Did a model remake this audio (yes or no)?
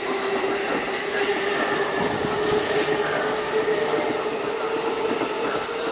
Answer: no